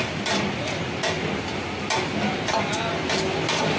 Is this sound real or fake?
real